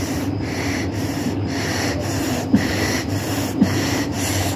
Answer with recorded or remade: remade